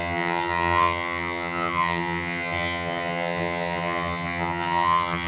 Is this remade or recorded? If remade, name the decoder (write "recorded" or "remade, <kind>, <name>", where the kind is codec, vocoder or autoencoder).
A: remade, vocoder, HiFi-GAN